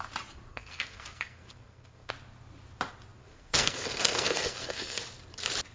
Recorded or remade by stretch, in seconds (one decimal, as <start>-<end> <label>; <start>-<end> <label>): 0.0-0.5 recorded; 0.5-2.1 remade; 2.1-3.2 recorded; 3.2-5.0 remade; 5.0-5.7 recorded